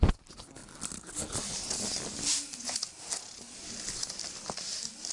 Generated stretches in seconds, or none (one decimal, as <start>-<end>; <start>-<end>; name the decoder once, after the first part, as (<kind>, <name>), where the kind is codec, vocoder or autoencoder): none